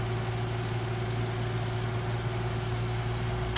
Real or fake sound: real